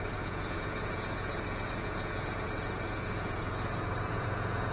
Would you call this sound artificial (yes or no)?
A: yes